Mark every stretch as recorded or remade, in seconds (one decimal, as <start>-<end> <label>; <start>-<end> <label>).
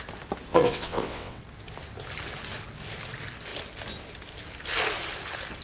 0.0-0.5 recorded; 0.5-1.4 remade; 1.4-5.6 recorded